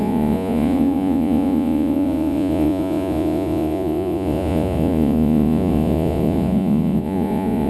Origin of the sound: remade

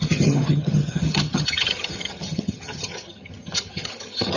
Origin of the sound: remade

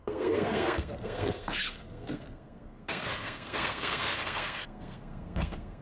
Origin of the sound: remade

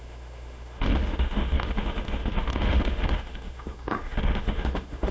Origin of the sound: remade